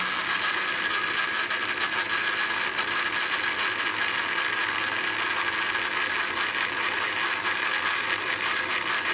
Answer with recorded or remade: recorded